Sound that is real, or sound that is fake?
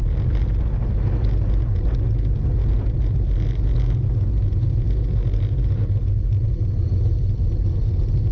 real